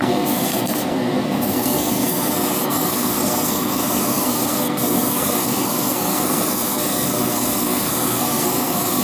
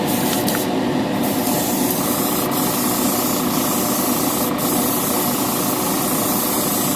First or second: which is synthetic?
first